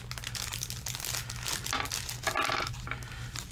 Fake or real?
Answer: real